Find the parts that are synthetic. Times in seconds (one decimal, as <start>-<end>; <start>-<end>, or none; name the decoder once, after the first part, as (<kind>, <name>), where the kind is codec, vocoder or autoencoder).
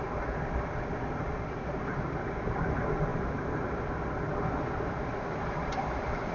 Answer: none